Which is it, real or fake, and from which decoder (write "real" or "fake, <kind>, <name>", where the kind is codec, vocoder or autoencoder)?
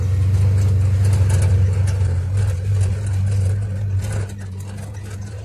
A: real